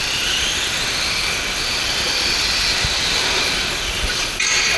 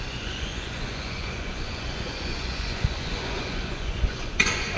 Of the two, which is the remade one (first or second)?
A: second